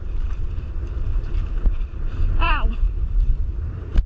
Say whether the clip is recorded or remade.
remade